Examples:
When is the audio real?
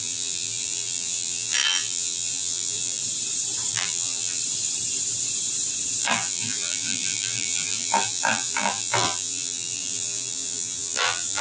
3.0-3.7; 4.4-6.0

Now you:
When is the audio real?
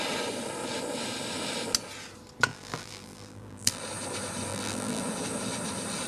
0.0-2.5; 3.8-4.5; 5.0-6.1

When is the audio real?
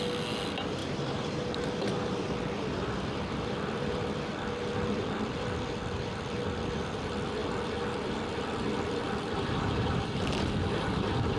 0.0-0.8; 5.8-7.4; 8.3-11.4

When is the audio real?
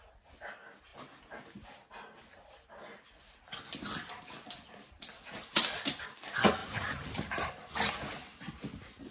0.0-6.6; 7.5-9.1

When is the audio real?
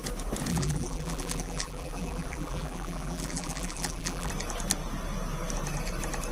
0.0-0.5; 4.3-6.3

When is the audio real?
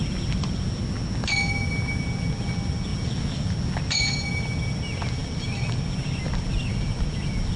0.0-7.6